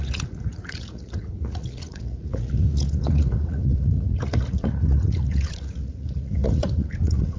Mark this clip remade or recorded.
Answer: remade